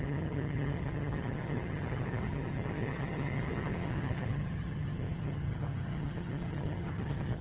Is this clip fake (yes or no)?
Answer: yes